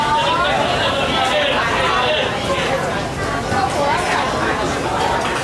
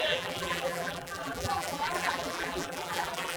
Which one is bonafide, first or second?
first